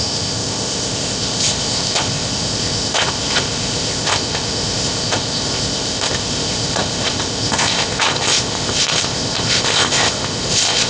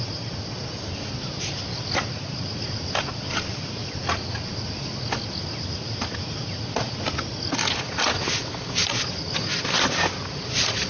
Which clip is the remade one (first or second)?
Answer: first